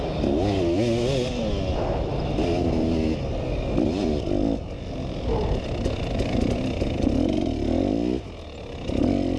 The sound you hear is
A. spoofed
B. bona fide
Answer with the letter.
B